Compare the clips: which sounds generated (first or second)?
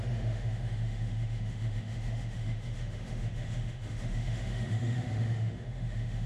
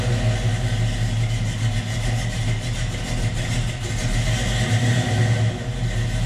first